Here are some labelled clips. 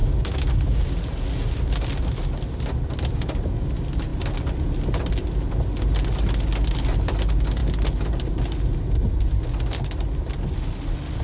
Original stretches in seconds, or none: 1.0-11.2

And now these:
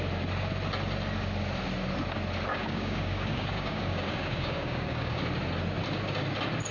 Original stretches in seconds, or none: 0.0-2.5; 5.2-6.7

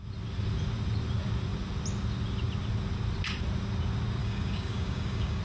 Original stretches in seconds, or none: 0.0-4.2

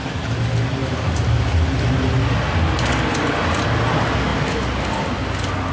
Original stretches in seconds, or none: 0.0-5.7